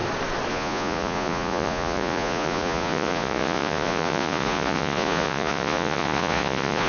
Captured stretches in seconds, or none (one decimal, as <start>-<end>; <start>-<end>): 0.0-0.5